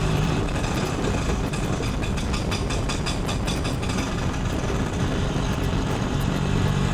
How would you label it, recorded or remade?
remade